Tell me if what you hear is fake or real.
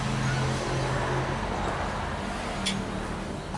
real